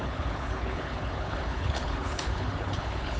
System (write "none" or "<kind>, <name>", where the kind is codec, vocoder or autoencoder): codec, HILCodec